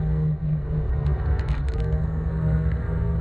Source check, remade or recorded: remade